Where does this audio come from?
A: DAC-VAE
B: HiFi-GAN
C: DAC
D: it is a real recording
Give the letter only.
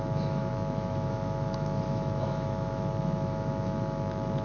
A